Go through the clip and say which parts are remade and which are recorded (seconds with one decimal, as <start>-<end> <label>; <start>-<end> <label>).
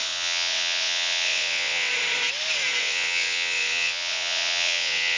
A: 0.0-1.9 remade; 1.9-2.8 recorded; 2.8-5.2 remade